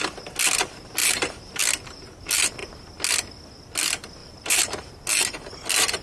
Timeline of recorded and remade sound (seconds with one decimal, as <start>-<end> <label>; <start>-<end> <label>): 0.0-1.0 recorded; 1.0-1.6 remade; 1.6-4.2 recorded; 4.2-4.9 remade; 4.9-6.0 recorded